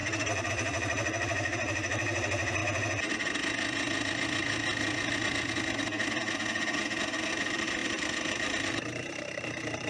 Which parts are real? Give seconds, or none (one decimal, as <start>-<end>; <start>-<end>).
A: 2.6-7.3